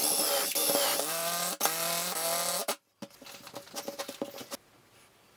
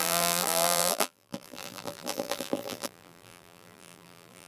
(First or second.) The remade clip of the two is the second